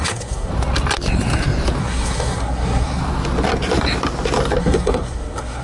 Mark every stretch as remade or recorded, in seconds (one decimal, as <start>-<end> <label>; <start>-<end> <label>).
0.0-0.5 remade; 0.5-1.8 recorded; 1.8-3.0 remade; 3.0-4.6 recorded; 4.6-5.6 remade